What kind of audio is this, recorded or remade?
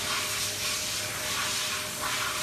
recorded